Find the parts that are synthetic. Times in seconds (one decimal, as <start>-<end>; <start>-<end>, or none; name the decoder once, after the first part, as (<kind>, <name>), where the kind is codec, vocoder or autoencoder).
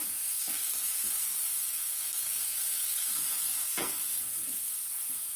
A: 0.0-5.4 (codec, SNAC)